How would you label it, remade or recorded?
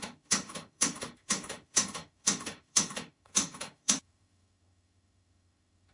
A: remade